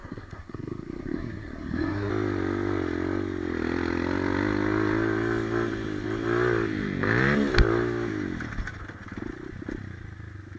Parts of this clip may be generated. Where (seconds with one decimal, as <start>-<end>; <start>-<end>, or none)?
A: 0.0-2.1